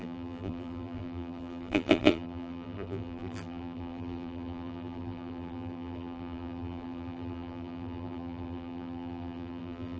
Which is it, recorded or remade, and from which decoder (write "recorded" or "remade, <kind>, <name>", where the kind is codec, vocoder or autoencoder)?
remade, vocoder, BigVGAN v2